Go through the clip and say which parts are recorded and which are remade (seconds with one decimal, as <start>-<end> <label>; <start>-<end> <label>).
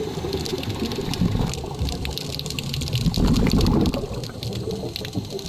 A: 0.0-5.5 recorded